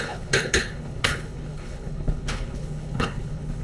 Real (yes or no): no